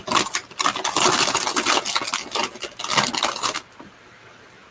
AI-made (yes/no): no